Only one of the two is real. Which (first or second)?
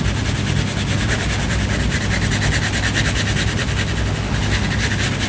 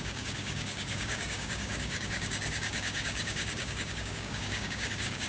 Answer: first